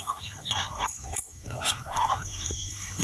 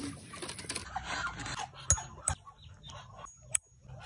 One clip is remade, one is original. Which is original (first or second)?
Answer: second